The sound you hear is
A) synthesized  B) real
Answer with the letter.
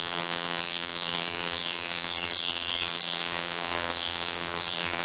A